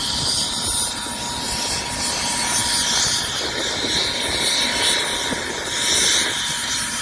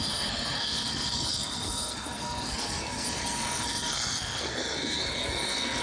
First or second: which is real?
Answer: first